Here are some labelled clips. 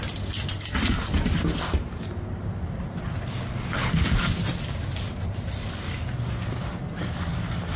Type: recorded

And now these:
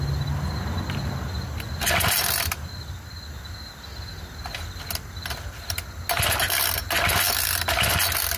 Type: recorded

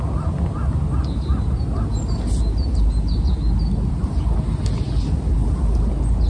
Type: recorded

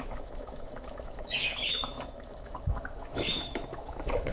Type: remade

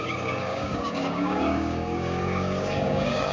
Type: remade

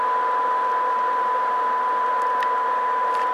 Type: recorded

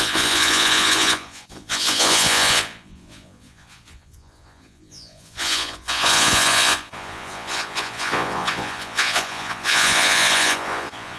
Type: remade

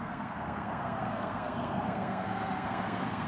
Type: remade